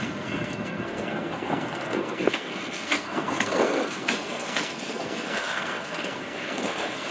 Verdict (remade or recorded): remade